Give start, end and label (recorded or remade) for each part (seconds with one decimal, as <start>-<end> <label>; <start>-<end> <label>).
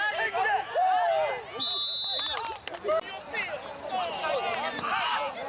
0.0-5.5 recorded